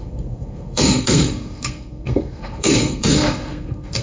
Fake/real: fake